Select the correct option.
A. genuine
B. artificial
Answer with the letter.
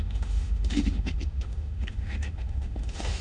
B